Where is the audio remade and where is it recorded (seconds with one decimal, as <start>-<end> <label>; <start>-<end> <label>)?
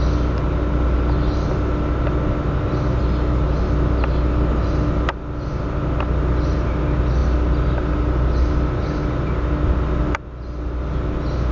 0.0-11.5 recorded